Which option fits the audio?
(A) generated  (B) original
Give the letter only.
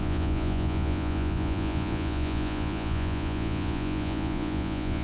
A